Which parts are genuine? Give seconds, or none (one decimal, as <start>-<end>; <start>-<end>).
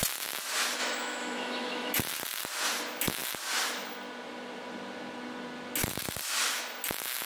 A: 0.0-0.8; 2.0-7.3